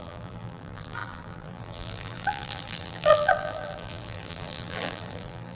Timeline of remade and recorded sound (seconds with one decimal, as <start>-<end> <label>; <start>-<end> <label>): 0.0-5.5 remade